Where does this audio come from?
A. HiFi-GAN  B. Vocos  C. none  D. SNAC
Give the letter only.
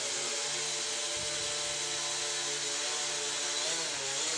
C